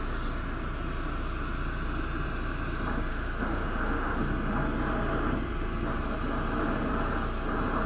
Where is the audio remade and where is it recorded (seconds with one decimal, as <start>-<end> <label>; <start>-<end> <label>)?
0.0-3.1 recorded; 3.1-4.3 remade; 4.3-7.9 recorded